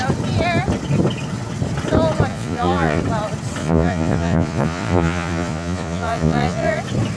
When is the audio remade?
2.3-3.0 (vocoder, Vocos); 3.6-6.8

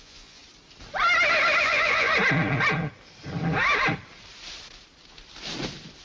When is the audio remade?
0.0-0.4 (vocoder, Vocos); 1.6-2.1

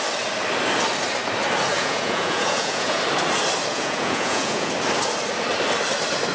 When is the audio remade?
1.7-3.0 (vocoder, Vocos); 3.7-4.7

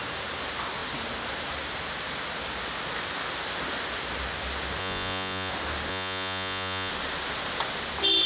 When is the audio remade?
4.8-5.5 (vocoder, Vocos); 5.9-6.9

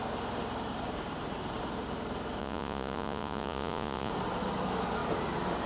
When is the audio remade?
2.4-4.1 (vocoder, Vocos)